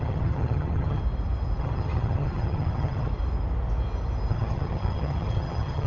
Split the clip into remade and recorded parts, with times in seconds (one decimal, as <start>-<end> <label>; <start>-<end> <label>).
0.0-1.0 remade; 1.0-1.6 recorded; 1.6-3.1 remade; 3.1-4.3 recorded; 4.3-5.9 remade